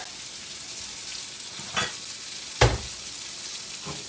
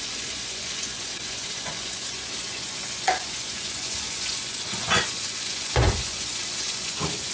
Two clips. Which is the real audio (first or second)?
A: first